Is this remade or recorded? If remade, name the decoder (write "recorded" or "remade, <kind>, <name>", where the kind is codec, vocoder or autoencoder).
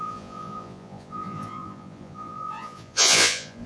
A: remade, vocoder, Vocos